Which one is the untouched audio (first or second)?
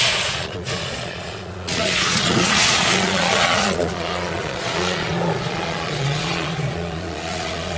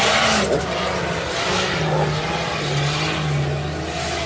second